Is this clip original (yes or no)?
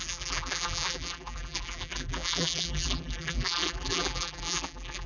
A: no